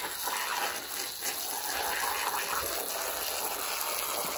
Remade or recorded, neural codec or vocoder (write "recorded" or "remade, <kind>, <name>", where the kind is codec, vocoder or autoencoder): recorded